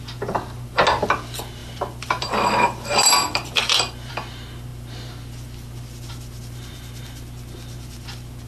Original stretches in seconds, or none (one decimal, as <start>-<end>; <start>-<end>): 0.0-1.6; 4.1-8.5